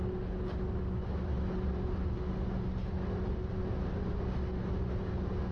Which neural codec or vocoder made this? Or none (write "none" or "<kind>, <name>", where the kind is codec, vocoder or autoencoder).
none